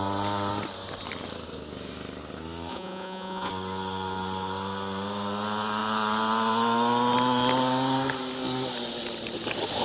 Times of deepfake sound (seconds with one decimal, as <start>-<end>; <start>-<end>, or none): 2.7-3.5

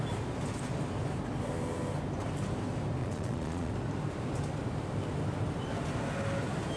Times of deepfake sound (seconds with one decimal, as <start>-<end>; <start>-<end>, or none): 3.0-3.7

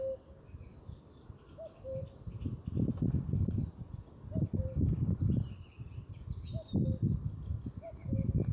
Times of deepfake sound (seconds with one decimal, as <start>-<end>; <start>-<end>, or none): none

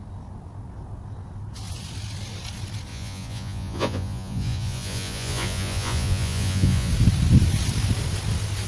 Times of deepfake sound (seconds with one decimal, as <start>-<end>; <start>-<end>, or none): 2.9-6.9

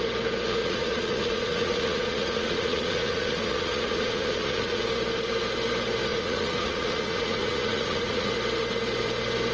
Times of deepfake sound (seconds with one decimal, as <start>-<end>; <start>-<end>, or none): 0.6-4.8; 6.1-8.3

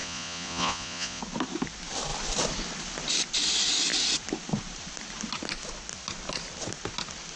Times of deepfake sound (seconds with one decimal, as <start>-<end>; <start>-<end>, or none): 0.0-1.2

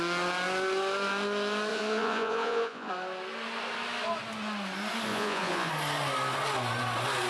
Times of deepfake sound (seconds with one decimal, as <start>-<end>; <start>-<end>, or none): 1.7-2.9; 5.1-5.7

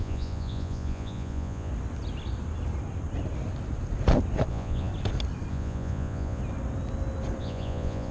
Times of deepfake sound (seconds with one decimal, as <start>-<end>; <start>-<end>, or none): 0.0-1.7; 4.5-4.9; 5.5-6.4; 7.4-8.1